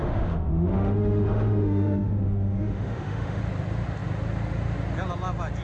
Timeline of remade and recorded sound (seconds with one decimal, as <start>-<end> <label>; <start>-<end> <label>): 0.0-3.4 remade; 3.4-5.6 recorded